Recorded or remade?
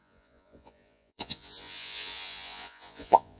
remade